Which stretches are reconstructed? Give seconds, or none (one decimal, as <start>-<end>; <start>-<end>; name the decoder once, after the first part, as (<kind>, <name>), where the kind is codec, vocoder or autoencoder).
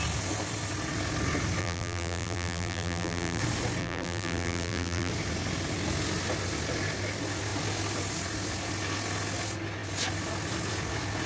1.6-3.4 (vocoder, BigVGAN v2); 3.8-5.1